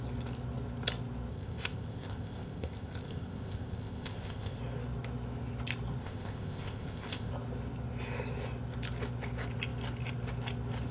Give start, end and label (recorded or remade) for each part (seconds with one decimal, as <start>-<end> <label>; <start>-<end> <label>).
0.0-1.3 recorded; 1.3-4.6 remade; 4.6-6.0 recorded; 6.0-7.3 remade; 7.3-10.9 recorded